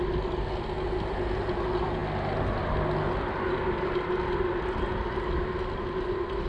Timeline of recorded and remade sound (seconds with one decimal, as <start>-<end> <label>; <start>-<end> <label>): 0.0-6.5 recorded